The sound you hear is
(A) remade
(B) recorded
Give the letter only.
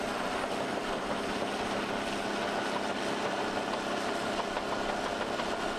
B